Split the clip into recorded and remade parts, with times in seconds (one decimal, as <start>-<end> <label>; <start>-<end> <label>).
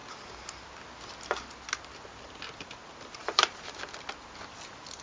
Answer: 0.0-3.2 recorded; 3.2-3.8 remade; 3.8-5.0 recorded